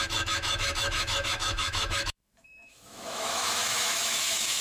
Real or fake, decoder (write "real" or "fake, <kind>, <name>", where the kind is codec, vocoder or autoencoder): fake, autoencoder, DAC-VAE